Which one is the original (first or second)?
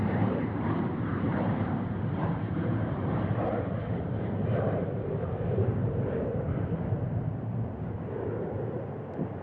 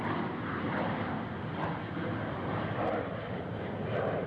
second